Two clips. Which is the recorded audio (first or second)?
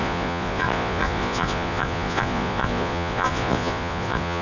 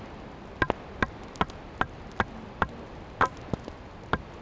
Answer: second